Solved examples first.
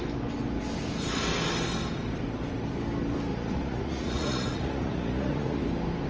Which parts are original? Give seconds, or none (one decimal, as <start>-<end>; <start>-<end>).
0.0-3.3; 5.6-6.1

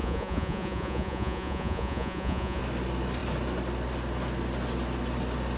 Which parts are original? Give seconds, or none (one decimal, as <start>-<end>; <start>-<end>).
2.6-5.6

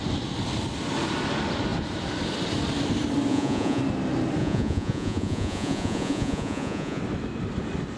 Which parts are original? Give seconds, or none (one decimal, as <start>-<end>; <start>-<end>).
0.0-3.3; 3.8-4.4; 7.0-8.0

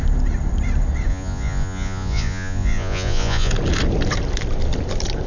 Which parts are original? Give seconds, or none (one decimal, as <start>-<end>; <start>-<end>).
0.0-1.1; 3.5-5.3